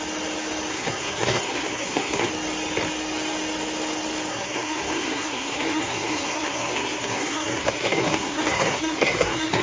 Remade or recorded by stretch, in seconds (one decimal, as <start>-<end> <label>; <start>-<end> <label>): 0.0-0.7 recorded; 0.7-2.3 remade; 2.3-4.3 recorded; 4.3-9.6 remade